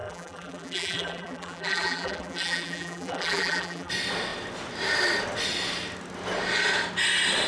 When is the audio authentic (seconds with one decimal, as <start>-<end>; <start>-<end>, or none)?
3.9-7.5